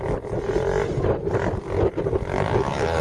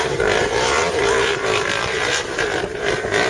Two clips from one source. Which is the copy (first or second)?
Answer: second